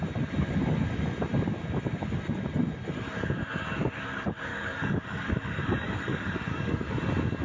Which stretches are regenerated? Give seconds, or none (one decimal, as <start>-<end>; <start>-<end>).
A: 4.5-7.0